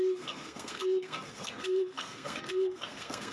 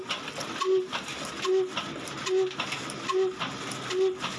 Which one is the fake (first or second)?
first